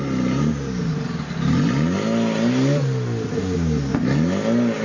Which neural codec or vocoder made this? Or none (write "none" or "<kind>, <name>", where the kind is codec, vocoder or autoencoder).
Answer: none